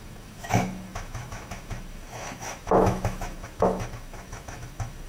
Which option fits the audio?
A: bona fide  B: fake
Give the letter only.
B